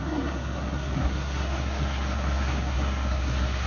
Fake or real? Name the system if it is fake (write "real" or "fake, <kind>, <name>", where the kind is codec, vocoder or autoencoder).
fake, codec, SNAC